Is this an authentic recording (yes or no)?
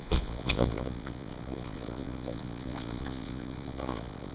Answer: no